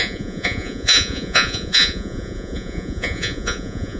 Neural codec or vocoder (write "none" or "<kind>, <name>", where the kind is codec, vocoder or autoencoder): vocoder, Vocos